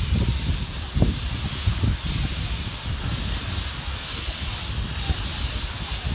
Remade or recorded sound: recorded